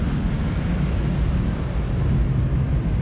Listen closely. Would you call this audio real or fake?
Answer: real